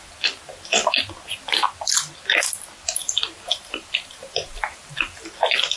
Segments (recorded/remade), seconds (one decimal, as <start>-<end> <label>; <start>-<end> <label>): 0.0-3.0 recorded; 3.0-5.2 remade; 5.2-5.8 recorded

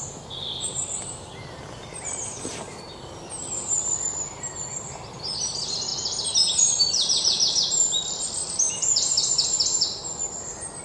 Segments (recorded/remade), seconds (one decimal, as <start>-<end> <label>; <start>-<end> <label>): 0.0-10.8 remade

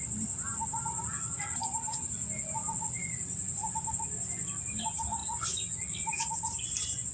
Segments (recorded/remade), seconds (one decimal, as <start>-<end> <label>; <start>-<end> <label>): 0.0-1.9 recorded; 1.9-4.0 remade; 4.0-7.1 recorded

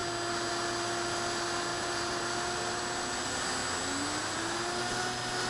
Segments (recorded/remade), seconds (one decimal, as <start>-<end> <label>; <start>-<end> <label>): 0.0-1.7 recorded; 1.7-2.2 remade; 2.2-5.5 recorded

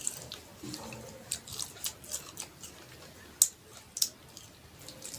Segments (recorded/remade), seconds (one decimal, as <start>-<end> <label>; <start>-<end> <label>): 0.0-0.5 recorded; 0.5-3.0 remade; 3.0-5.2 recorded

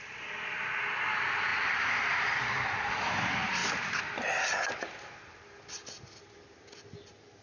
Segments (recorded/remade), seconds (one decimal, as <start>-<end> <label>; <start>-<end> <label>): 0.0-1.5 recorded; 1.5-3.0 remade; 3.0-3.6 recorded; 3.6-4.1 remade; 4.1-7.4 recorded

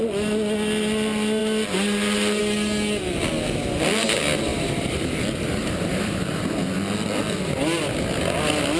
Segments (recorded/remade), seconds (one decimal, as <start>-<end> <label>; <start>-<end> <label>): 0.0-4.5 recorded; 4.5-6.4 remade; 6.4-8.8 recorded